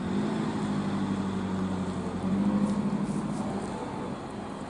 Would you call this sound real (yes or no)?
yes